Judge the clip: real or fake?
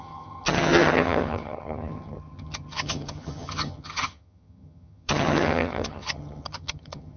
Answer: fake